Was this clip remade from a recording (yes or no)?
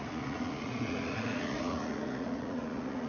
yes